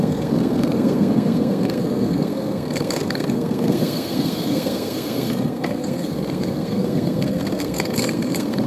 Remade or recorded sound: remade